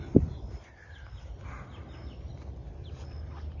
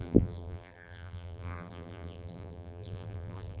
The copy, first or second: second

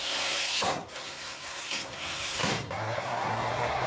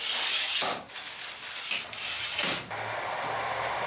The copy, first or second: first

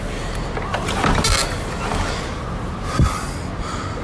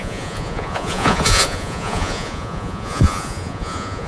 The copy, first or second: second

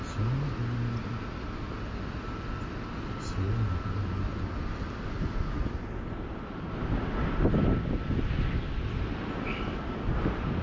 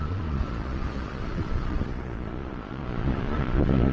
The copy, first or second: second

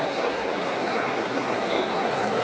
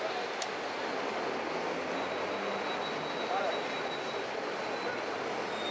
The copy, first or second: first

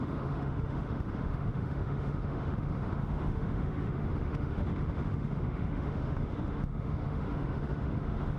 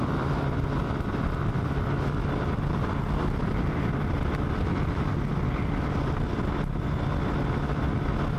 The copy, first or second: first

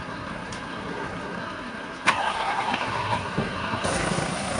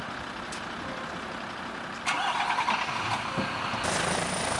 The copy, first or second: first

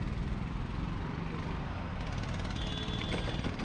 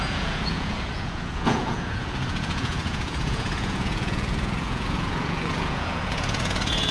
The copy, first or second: second